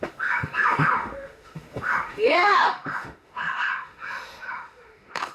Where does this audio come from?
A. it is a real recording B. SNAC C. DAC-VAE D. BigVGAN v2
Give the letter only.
C